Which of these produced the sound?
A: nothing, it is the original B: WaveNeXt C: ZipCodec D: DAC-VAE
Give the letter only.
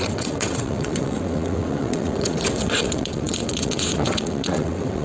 B